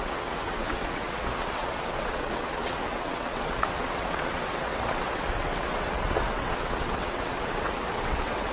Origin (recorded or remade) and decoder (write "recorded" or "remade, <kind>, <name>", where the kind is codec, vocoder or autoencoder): remade, vocoder, WaveNeXt